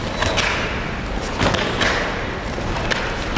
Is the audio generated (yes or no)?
no